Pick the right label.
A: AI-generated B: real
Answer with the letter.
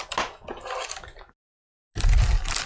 B